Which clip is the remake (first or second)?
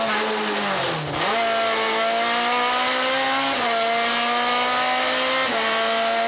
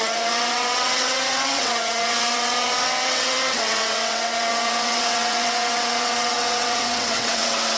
second